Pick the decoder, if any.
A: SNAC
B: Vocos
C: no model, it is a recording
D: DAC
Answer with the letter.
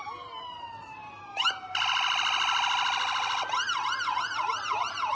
C